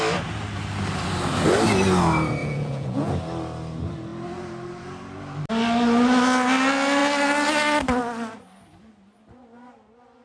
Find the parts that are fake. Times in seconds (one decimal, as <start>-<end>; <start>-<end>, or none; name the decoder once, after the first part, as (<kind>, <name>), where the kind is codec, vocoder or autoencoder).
2.4-3.1 (vocoder, Vocos)